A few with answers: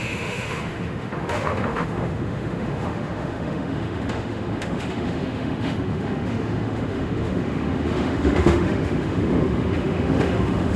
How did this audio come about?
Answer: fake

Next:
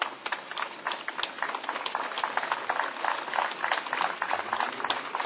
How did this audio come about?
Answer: real